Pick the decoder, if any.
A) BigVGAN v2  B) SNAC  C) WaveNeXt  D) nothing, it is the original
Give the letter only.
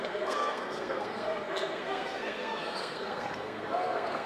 B